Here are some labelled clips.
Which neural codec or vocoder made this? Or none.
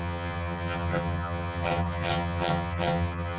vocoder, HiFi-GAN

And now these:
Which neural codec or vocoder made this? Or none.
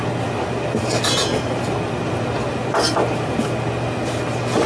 none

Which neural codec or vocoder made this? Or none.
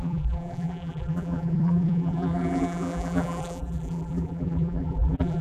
vocoder, BigVGAN v2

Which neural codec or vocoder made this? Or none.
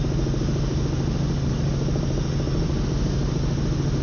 none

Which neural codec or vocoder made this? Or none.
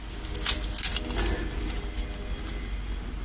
none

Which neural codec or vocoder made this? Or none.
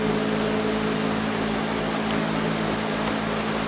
none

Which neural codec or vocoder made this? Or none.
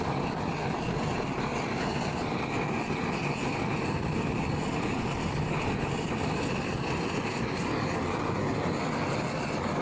none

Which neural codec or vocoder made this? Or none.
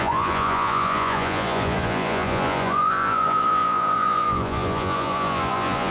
vocoder, Vocos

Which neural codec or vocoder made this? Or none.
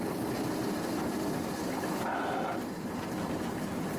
none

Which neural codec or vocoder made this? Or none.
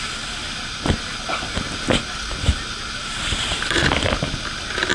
none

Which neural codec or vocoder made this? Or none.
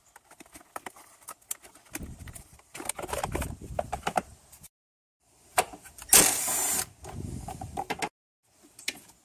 none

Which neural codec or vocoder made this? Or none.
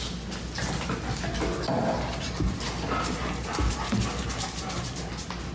none